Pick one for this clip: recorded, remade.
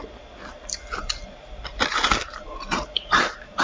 remade